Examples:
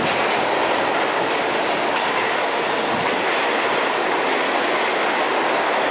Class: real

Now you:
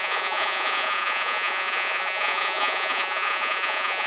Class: fake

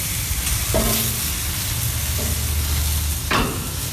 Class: real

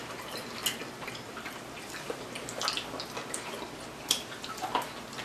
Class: real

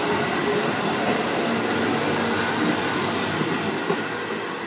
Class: real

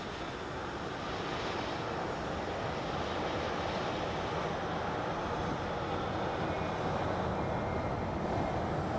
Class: real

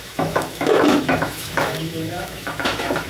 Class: fake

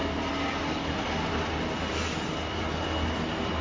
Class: real